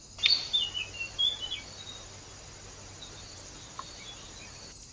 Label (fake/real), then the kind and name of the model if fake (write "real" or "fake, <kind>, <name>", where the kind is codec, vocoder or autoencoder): real